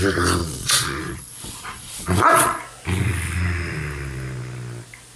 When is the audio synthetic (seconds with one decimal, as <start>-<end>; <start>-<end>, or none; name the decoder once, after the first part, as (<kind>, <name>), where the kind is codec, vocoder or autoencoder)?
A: 0.4-2.6 (vocoder, Vocos)